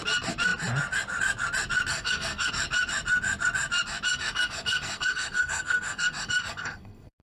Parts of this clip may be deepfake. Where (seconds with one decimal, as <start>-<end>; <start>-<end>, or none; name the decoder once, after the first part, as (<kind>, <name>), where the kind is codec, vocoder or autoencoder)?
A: 1.9-2.5 (codec, SNAC); 4.1-7.2